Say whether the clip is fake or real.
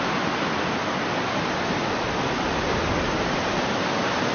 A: real